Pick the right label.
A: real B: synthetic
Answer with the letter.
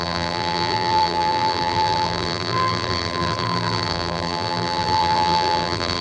B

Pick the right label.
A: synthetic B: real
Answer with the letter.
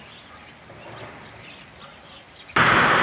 B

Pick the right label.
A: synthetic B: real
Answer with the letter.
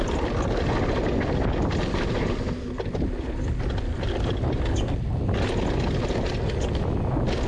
B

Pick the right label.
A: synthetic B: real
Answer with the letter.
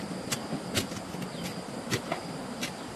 B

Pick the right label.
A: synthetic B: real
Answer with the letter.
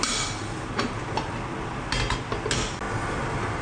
B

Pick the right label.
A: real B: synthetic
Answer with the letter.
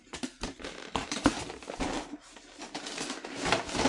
B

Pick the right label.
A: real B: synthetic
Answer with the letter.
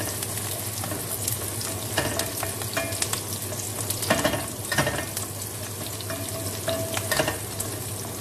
A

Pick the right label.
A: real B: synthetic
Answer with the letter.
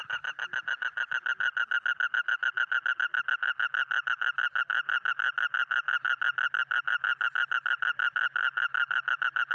A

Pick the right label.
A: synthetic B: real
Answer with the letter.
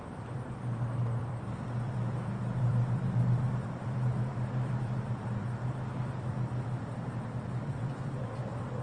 A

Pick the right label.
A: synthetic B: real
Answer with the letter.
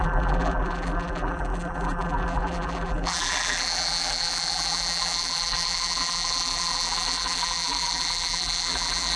A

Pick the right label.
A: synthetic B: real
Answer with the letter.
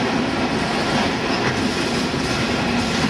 B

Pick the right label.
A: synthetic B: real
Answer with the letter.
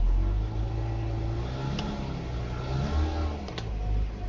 B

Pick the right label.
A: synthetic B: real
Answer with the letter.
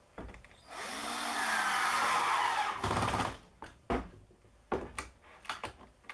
B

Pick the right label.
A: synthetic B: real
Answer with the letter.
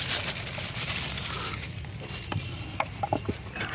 B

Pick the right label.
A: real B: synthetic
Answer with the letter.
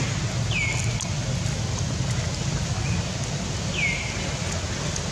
A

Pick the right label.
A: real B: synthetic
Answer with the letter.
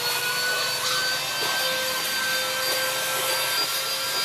A